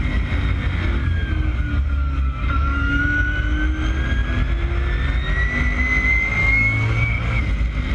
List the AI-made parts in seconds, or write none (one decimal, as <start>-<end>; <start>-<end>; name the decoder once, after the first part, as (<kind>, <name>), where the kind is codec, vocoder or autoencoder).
1.0-3.0 (codec, DAC); 6.4-7.4